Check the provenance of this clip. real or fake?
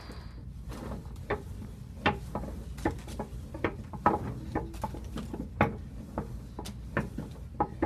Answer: real